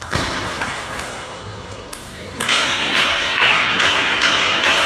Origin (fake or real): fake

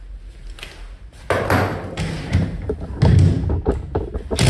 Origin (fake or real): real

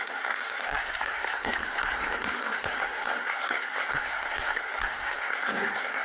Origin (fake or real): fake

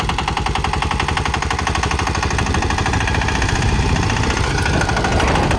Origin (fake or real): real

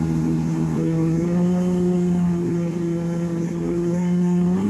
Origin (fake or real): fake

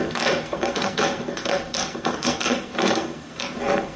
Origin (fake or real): fake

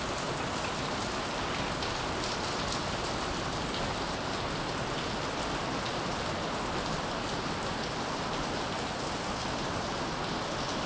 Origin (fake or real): real